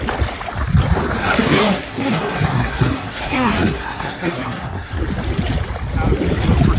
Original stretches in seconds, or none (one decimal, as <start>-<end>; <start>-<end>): 0.0-1.2; 5.0-6.8